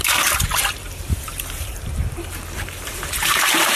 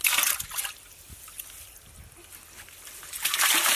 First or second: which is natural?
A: second